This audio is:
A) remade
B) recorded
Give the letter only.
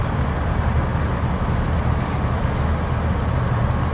B